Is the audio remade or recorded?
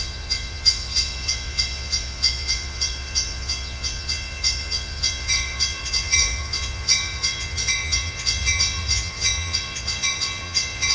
remade